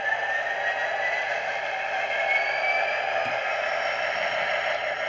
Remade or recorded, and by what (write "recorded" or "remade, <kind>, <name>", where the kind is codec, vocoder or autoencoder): recorded